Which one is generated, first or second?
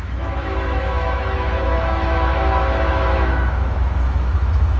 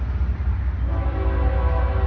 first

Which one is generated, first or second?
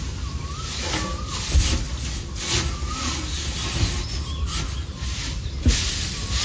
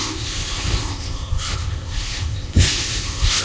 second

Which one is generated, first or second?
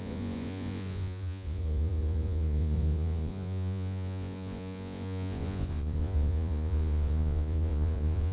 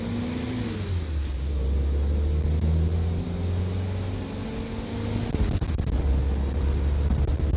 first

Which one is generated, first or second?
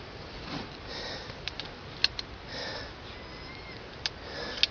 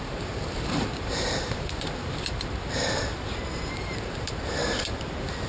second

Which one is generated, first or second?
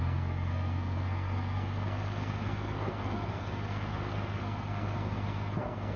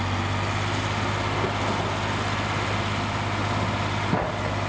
first